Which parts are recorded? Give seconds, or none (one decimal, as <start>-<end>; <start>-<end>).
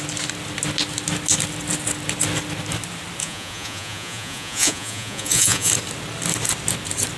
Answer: 0.0-3.2; 5.7-7.2